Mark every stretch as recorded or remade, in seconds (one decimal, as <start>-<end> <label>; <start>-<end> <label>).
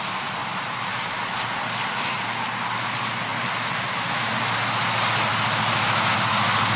0.0-0.4 recorded; 0.4-1.1 remade; 1.1-6.8 recorded